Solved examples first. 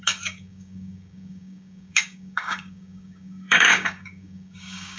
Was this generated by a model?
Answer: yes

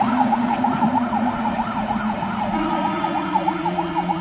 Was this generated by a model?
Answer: yes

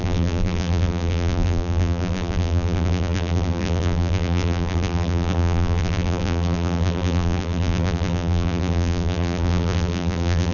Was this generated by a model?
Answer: yes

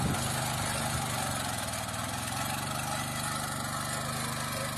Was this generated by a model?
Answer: no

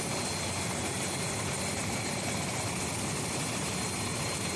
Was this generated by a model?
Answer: yes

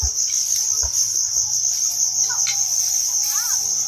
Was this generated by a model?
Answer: no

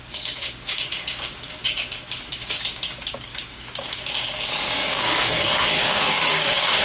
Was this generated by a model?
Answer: yes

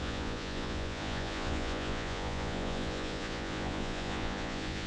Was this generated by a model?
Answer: yes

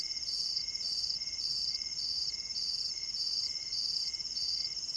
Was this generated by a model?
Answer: yes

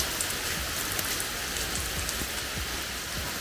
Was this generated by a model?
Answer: no